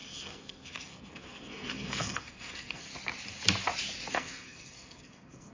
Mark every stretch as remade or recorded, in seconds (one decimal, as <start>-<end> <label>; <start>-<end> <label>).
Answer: 0.0-2.9 remade; 2.9-4.1 recorded; 4.1-5.5 remade